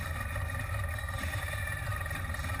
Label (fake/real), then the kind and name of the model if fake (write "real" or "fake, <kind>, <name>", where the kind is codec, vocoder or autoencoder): fake, vocoder, BigVGAN v2